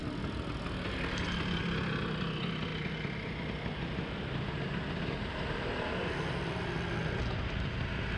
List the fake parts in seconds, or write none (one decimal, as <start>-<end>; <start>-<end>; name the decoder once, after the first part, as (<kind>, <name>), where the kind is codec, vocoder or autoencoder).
none